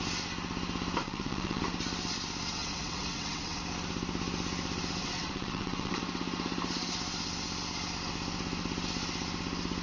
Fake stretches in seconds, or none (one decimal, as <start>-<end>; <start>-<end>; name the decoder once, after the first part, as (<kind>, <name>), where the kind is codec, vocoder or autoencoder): 1.0-1.6 (vocoder, WaveNeXt); 2.6-3.6; 5.0-6.0